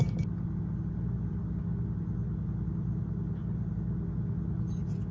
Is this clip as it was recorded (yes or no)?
yes